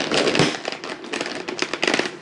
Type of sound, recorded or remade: recorded